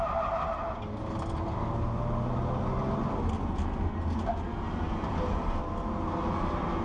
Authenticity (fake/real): real